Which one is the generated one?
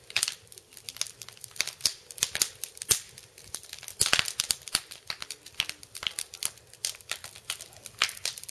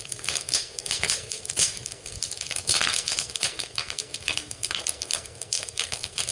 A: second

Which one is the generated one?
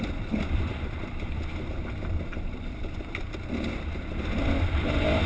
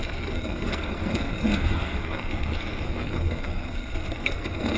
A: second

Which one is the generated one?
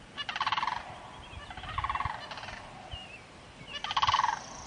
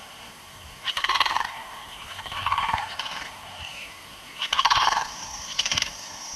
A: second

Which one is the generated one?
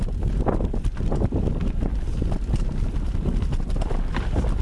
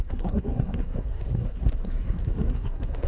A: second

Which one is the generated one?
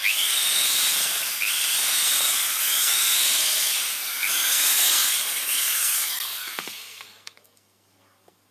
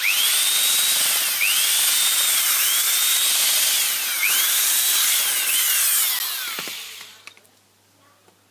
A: first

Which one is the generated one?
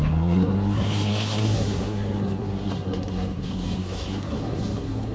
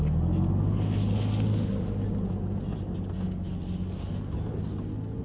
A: first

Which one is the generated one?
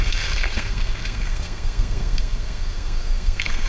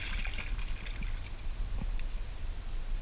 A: first